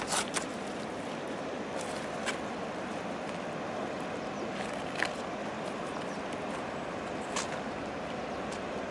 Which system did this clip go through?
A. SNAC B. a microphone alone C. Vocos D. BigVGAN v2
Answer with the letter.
B